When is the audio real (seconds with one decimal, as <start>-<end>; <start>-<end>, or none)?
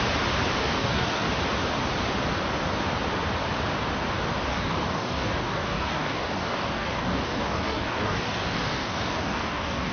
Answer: 0.0-0.6; 1.3-4.5